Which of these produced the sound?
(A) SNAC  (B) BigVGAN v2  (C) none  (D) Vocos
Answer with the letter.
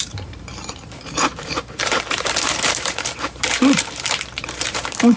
B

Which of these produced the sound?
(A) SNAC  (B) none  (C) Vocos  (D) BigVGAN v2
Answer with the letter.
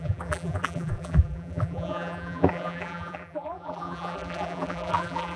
D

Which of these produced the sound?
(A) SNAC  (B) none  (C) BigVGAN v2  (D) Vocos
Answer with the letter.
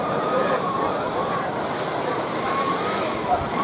C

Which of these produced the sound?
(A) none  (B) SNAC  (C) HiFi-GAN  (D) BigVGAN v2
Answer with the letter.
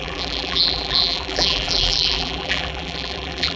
D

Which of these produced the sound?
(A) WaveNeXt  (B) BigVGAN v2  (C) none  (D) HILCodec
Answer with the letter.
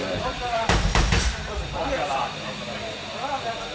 B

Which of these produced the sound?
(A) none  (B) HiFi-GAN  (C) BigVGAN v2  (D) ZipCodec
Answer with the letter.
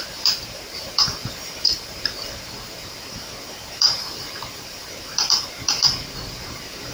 C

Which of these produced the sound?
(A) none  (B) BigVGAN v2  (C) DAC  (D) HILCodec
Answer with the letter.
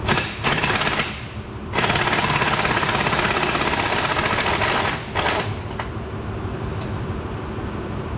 B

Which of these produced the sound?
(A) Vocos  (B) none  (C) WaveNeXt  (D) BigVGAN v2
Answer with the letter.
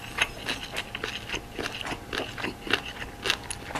B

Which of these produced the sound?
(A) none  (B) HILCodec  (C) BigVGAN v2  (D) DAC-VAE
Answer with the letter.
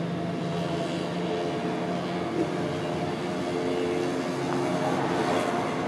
A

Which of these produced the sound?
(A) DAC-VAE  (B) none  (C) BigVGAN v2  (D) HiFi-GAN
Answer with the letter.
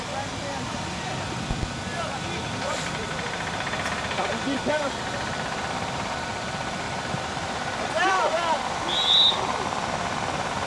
C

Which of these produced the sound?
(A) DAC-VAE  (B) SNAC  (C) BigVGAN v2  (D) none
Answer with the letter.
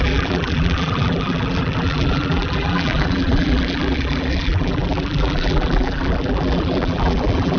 C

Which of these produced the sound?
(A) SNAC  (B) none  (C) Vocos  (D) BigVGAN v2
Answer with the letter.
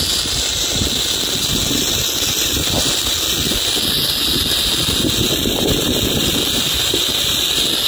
B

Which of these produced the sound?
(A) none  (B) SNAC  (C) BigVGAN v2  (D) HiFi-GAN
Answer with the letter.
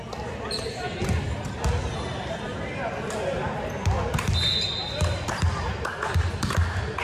A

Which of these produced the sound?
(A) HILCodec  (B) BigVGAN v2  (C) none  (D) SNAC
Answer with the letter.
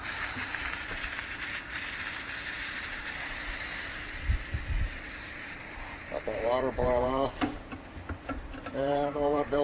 B